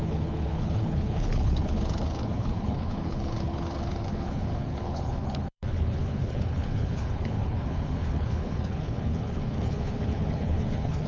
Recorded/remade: remade